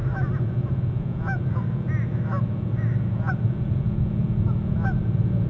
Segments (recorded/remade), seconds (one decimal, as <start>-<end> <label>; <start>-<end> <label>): 0.0-5.5 recorded